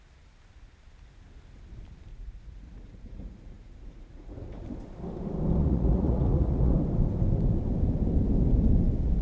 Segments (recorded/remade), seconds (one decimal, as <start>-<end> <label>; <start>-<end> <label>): 0.0-2.1 recorded; 2.1-4.6 remade; 4.6-5.6 recorded; 5.6-6.7 remade; 6.7-9.2 recorded

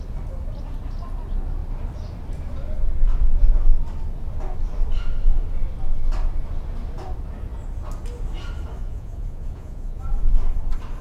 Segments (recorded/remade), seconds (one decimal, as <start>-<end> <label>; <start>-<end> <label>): 0.0-8.8 recorded; 8.8-10.0 remade; 10.0-11.0 recorded

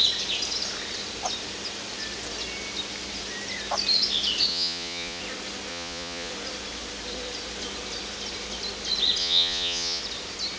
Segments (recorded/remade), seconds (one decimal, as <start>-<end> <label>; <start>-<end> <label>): 0.0-4.5 recorded; 4.5-5.2 remade; 5.2-5.7 recorded; 5.7-6.3 remade; 6.3-9.2 recorded; 9.2-10.0 remade; 10.0-10.6 recorded

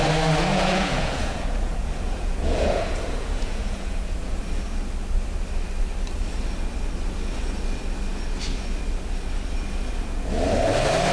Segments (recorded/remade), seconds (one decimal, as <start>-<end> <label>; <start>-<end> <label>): 0.0-0.5 recorded; 0.5-4.4 remade; 4.4-11.1 recorded

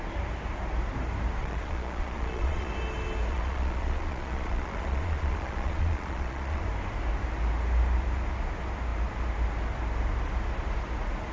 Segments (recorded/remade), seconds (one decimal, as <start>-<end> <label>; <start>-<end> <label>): 0.0-1.4 recorded; 1.4-2.7 remade; 2.7-3.3 recorded; 3.3-6.6 remade; 6.6-11.3 recorded

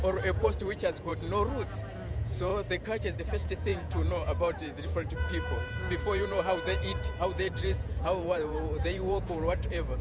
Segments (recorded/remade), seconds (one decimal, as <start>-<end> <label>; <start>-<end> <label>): 0.0-1.1 remade; 1.1-2.1 recorded; 2.1-2.5 remade; 2.5-3.2 recorded; 3.2-10.0 remade

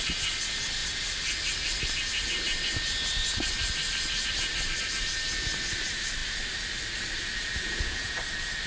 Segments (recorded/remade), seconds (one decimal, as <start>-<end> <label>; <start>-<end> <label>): 0.0-7.5 recorded; 7.5-8.2 remade; 8.2-8.7 recorded